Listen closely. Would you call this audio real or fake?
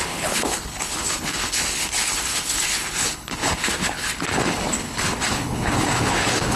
fake